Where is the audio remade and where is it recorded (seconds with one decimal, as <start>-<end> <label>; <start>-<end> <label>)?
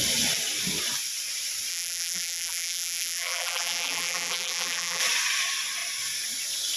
0.0-1.7 recorded; 1.7-5.0 remade; 5.0-6.8 recorded